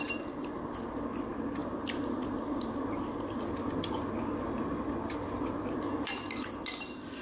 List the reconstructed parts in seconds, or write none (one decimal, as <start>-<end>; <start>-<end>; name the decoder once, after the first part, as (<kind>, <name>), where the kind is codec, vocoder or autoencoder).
none